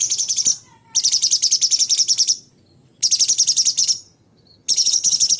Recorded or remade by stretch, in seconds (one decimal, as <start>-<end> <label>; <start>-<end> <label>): 0.0-3.8 recorded; 3.8-5.4 remade